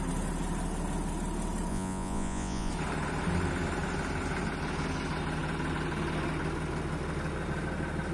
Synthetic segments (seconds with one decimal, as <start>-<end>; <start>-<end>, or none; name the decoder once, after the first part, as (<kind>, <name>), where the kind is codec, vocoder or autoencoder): 1.7-2.7 (vocoder, Vocos)